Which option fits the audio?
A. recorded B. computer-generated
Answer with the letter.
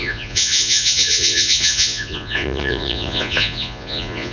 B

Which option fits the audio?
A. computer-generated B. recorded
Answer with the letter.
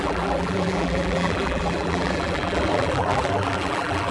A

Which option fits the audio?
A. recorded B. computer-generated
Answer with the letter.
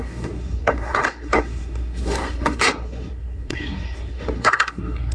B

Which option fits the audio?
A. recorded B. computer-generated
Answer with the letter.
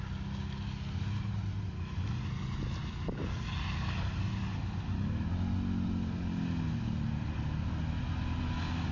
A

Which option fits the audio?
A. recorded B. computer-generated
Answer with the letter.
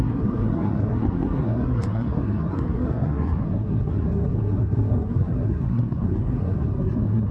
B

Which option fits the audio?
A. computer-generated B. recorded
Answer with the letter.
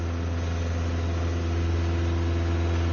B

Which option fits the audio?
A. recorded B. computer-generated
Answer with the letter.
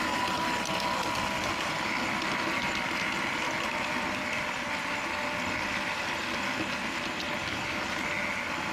A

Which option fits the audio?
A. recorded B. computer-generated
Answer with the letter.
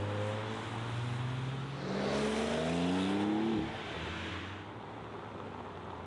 A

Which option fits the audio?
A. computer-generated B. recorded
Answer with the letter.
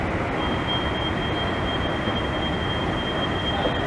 B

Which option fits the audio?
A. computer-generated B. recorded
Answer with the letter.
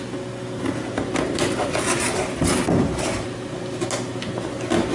B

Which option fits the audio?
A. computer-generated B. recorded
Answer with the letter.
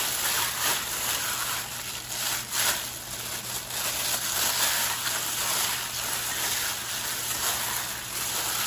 B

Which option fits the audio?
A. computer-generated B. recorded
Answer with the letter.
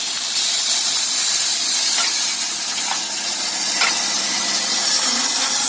B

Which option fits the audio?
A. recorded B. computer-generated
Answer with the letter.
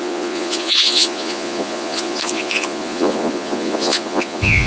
B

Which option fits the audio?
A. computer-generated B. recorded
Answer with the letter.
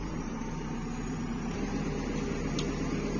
B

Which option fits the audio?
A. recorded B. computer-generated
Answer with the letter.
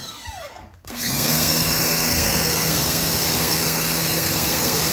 B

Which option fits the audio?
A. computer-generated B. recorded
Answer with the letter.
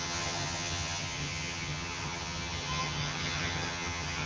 A